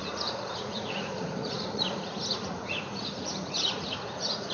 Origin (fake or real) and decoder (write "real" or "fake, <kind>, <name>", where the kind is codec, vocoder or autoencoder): fake, vocoder, Vocos